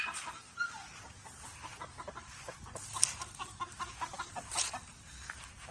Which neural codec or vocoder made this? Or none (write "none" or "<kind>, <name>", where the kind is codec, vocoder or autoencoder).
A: none